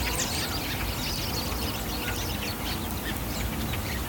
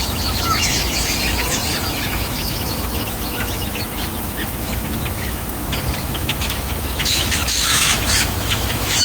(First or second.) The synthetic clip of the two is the second